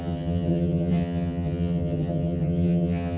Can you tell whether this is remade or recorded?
remade